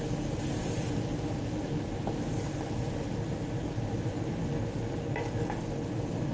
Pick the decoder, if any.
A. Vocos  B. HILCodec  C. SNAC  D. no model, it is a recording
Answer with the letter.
D